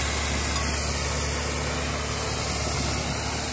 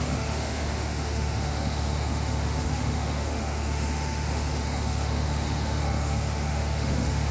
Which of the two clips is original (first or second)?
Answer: first